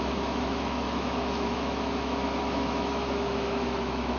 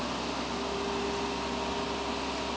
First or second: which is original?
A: second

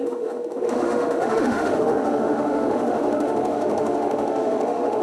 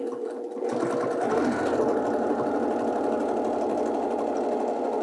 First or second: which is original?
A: second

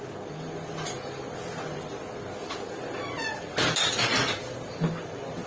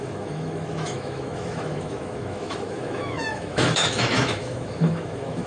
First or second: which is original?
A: first